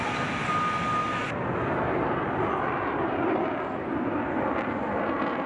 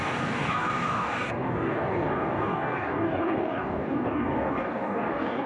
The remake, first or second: second